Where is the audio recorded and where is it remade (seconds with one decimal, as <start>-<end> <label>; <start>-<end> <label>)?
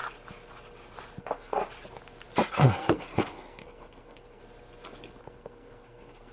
0.0-1.2 recorded; 1.2-1.6 remade; 1.6-2.5 recorded; 2.5-4.4 remade; 4.4-5.2 recorded; 5.2-6.3 remade